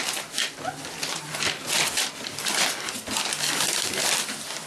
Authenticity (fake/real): real